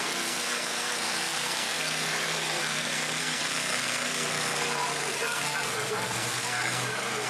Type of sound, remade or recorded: remade